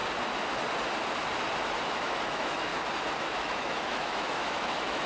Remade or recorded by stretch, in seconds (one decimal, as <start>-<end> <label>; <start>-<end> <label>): 0.0-1.8 recorded; 1.8-2.7 remade; 2.7-3.2 recorded; 3.2-5.1 remade